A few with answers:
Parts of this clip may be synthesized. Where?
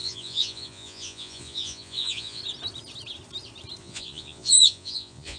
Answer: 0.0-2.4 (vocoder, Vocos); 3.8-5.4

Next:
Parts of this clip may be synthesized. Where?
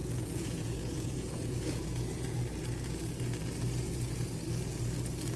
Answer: 0.0-2.4 (vocoder, Vocos); 3.8-4.4